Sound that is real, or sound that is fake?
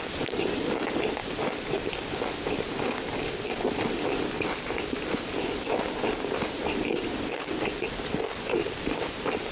real